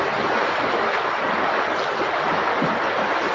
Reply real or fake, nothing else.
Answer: real